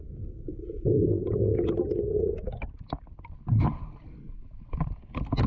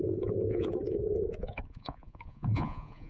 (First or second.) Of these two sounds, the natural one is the first